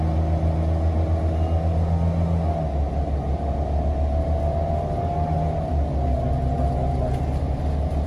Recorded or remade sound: recorded